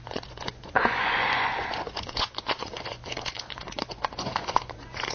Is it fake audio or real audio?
fake